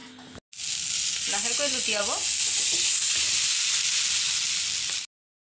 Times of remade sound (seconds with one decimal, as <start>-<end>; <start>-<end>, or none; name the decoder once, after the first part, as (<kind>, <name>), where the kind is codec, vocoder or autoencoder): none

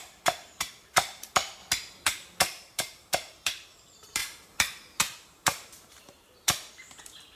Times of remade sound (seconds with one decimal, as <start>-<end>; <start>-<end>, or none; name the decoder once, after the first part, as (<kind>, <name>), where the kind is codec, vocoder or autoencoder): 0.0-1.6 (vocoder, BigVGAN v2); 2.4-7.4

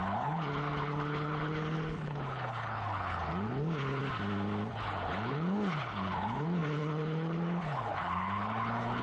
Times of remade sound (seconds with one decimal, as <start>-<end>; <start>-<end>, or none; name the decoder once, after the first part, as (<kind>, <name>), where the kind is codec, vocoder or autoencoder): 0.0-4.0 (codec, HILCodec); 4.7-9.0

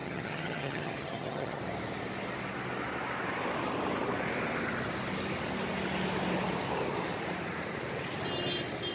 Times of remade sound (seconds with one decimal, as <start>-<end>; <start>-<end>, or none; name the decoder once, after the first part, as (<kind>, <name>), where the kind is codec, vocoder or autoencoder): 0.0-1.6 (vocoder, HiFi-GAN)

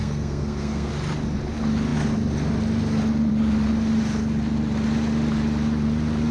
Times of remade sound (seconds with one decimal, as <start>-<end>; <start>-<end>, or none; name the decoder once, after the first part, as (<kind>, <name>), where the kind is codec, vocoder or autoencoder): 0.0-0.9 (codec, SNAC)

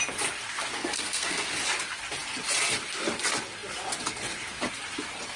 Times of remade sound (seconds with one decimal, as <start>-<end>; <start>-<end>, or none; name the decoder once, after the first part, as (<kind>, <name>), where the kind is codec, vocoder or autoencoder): 0.8-1.5 (codec, SNAC)